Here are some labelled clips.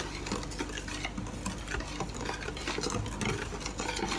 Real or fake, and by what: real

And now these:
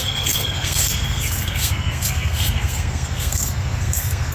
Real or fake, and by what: fake, codec, SNAC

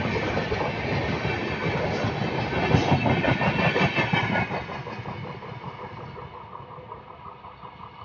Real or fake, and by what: real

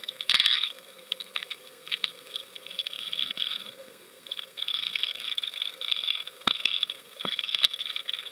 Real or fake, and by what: fake, codec, SNAC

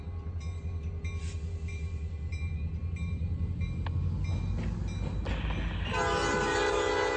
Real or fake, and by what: real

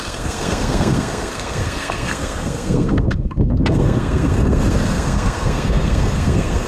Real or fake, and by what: fake, codec, SNAC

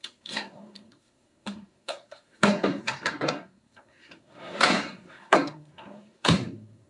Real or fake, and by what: fake, codec, SNAC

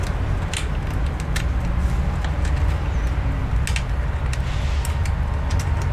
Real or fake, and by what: real